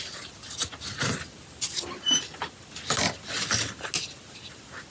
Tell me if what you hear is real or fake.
real